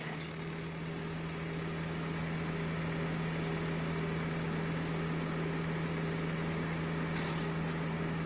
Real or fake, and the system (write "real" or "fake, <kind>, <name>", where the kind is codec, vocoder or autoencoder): real